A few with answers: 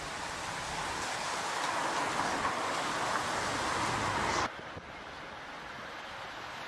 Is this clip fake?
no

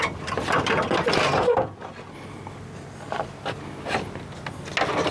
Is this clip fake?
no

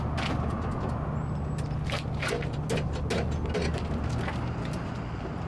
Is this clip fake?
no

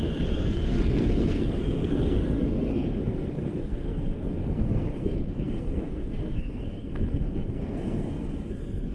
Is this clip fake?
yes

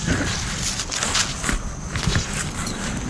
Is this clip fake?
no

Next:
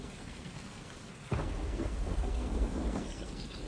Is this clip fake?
yes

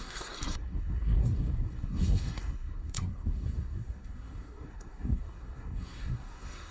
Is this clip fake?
yes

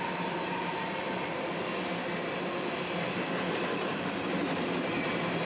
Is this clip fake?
no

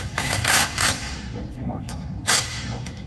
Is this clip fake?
yes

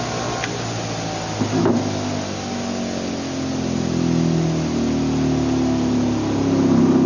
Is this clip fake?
no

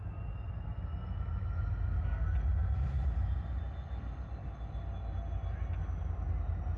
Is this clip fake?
no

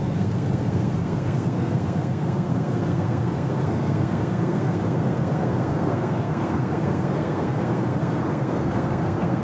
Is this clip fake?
yes